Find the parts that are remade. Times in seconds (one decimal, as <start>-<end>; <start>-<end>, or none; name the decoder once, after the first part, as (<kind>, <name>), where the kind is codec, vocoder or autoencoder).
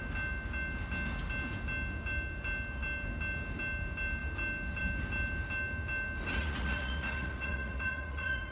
6.3-8.5 (vocoder, Vocos)